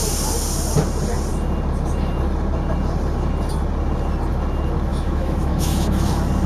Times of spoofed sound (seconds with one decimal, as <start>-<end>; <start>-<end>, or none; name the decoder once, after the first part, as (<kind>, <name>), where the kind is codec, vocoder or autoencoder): 4.9-6.1 (autoencoder, DAC-VAE)